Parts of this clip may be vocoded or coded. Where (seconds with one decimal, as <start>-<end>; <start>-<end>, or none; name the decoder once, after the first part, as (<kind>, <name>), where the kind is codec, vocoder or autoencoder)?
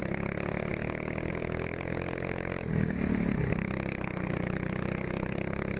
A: none